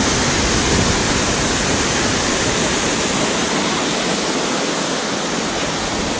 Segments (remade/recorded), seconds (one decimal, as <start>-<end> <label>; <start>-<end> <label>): 0.0-1.0 recorded; 1.0-2.7 remade; 2.7-6.2 recorded